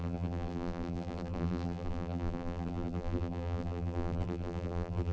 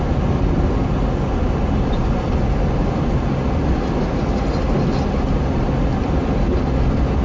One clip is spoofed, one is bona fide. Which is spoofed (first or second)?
first